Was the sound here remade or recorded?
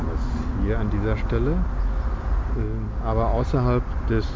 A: recorded